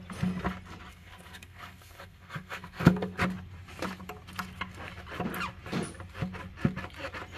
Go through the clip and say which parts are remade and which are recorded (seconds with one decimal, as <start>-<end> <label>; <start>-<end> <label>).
0.0-0.9 recorded; 0.9-3.2 remade; 3.2-7.4 recorded